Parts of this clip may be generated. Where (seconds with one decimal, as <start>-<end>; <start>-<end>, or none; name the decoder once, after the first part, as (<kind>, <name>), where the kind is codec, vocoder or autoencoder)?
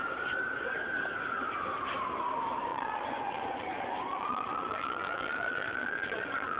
2.7-6.6 (vocoder, Vocos)